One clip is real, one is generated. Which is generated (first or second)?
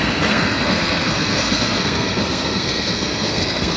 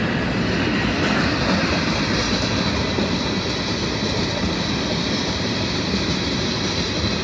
first